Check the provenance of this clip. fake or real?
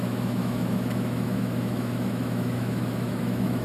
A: fake